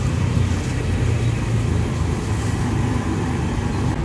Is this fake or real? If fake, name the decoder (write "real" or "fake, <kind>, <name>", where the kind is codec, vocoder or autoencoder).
real